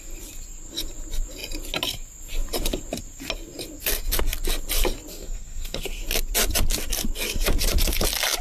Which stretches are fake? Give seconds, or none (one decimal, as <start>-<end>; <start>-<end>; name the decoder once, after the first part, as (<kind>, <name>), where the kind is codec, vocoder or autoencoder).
5.1-6.0 (codec, SNAC)